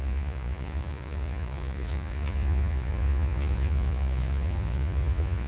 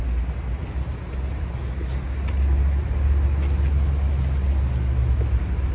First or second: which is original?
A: second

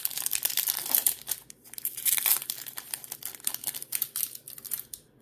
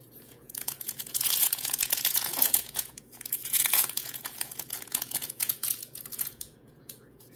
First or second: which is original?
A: first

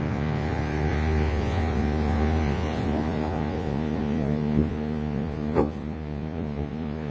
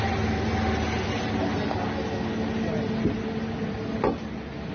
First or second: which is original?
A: second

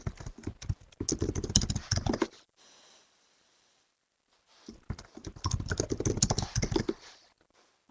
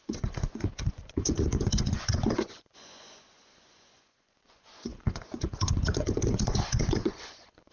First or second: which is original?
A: first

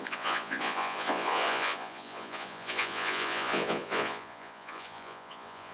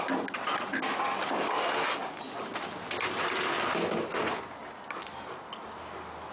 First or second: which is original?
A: second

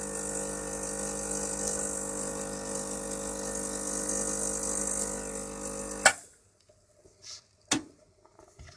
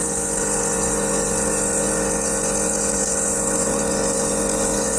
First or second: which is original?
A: first